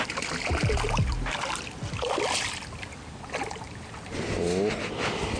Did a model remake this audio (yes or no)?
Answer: no